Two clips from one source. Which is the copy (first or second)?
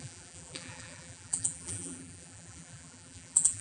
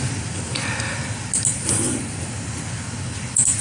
first